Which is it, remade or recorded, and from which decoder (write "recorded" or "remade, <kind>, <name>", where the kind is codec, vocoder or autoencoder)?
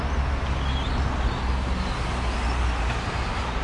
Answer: recorded